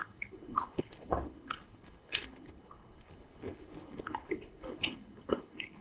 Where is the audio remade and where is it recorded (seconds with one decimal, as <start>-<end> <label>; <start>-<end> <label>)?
0.0-5.8 remade

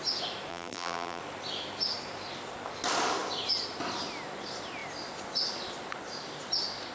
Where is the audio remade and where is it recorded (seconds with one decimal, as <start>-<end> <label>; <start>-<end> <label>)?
0.0-0.5 recorded; 0.5-1.2 remade; 1.2-6.9 recorded

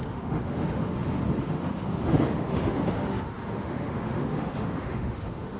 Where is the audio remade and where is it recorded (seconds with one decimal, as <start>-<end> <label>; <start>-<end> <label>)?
0.0-5.6 remade

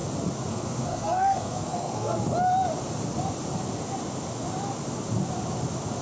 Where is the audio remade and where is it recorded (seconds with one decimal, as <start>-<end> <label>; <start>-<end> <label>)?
0.0-0.5 recorded; 0.5-2.2 remade; 2.2-6.0 recorded

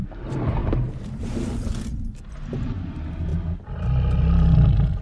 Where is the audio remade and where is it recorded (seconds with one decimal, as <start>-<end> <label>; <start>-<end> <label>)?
0.0-5.0 recorded

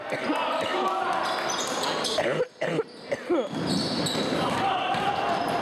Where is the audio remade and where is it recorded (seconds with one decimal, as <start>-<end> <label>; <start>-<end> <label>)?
0.0-3.8 recorded; 3.8-5.1 remade; 5.1-5.6 recorded